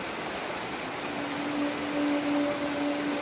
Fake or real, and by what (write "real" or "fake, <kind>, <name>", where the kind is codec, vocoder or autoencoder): real